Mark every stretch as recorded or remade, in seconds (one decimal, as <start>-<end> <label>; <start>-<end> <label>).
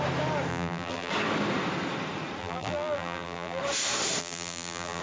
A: 0.0-0.5 recorded; 0.5-1.1 remade; 1.1-2.4 recorded; 2.4-3.6 remade; 3.6-4.2 recorded; 4.2-5.0 remade